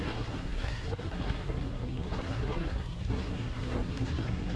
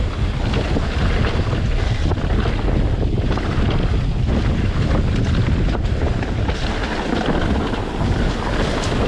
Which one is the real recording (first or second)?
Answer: second